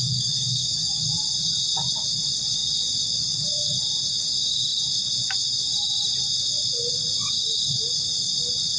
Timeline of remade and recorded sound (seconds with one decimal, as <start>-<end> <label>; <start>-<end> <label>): 0.0-1.0 remade; 1.0-8.8 recorded